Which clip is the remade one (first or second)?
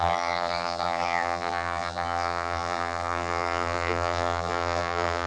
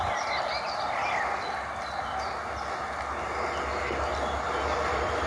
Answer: first